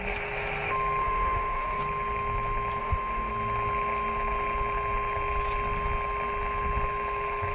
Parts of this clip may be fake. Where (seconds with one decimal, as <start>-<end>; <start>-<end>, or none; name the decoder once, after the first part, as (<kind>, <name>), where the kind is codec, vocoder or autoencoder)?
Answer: 1.0-1.8 (autoencoder, DAC-VAE); 2.8-3.3